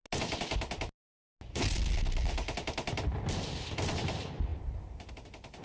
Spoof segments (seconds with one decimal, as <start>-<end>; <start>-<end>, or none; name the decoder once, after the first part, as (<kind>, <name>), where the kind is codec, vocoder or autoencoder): none